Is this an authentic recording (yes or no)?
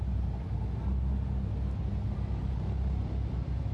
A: yes